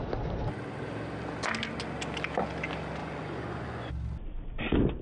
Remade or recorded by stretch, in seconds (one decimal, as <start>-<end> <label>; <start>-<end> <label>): 0.0-3.0 recorded; 3.0-3.9 remade; 3.9-5.0 recorded